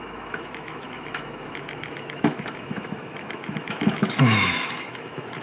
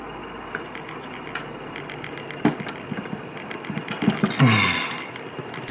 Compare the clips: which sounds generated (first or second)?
first